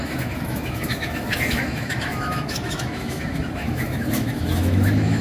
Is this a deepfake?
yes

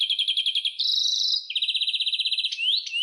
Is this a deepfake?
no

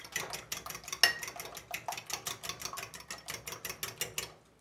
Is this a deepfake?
no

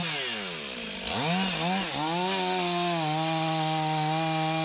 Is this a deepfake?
no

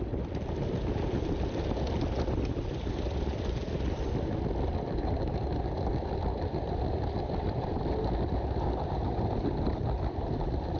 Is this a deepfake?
no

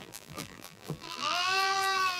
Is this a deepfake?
yes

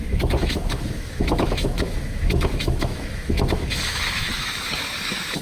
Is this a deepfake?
yes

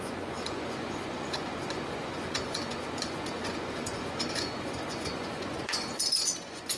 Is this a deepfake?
yes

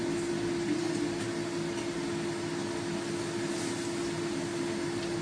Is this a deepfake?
no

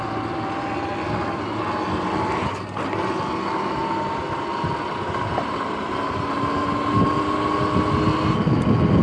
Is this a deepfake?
no